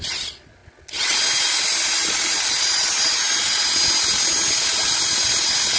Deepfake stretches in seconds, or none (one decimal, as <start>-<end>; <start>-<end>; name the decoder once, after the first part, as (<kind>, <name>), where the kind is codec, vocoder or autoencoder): none